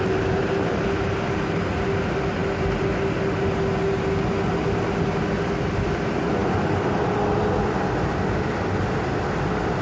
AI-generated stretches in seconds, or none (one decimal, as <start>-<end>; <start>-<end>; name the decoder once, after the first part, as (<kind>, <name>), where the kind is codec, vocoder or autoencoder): none